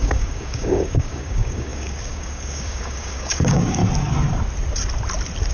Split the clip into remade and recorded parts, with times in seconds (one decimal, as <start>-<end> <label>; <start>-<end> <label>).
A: 0.0-3.8 remade; 3.8-5.5 recorded